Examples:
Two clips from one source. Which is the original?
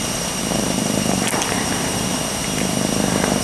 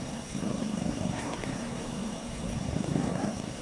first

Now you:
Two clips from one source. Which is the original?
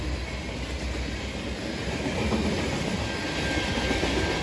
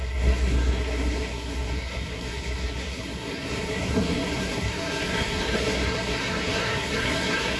first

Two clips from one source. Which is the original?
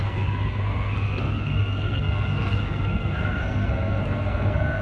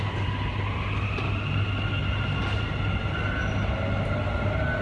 second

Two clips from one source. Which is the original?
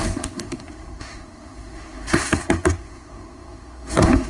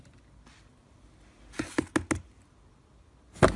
second